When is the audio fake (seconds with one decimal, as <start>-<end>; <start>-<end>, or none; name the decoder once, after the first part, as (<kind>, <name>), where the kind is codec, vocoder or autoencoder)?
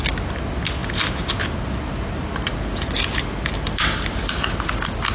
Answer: none